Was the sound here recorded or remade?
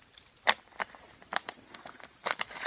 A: recorded